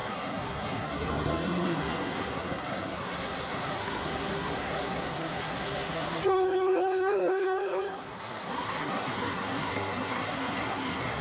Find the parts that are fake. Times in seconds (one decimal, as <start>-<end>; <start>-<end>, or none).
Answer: 0.0-11.2